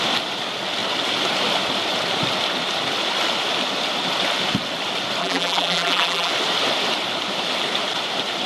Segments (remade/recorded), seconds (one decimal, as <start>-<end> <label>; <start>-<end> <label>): 0.0-5.2 recorded; 5.2-6.3 remade; 6.3-8.5 recorded

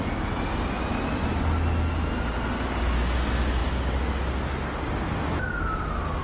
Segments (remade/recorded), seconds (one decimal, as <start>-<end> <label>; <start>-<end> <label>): 0.0-6.2 recorded

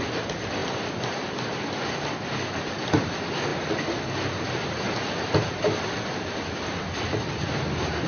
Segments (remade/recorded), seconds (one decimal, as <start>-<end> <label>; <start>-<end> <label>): 0.0-8.1 recorded

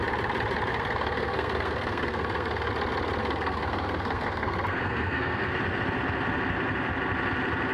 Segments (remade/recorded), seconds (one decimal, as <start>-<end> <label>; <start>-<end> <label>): 0.0-0.7 recorded; 0.7-2.7 remade; 2.7-3.2 recorded; 3.2-5.5 remade; 5.5-7.7 recorded

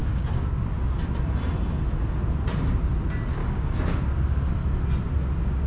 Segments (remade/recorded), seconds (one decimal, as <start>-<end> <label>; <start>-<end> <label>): 0.0-0.7 remade; 0.7-3.4 recorded; 3.4-4.5 remade; 4.5-5.7 recorded